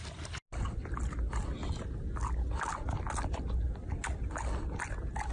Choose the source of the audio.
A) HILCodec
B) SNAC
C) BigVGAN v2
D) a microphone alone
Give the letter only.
D